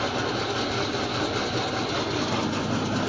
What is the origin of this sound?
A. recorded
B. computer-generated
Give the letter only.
A